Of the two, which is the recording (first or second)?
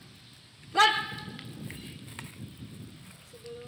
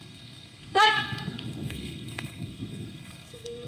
first